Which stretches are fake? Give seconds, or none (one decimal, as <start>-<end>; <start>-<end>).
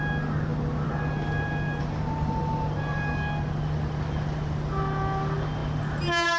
none